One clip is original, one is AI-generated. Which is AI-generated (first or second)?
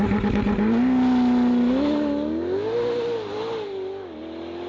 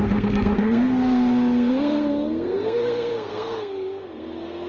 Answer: second